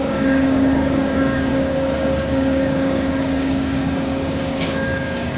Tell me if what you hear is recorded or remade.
remade